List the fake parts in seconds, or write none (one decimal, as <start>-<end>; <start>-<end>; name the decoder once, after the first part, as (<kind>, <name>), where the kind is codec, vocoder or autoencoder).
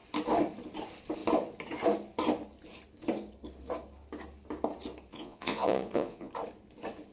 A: 5.1-6.3 (vocoder, Vocos)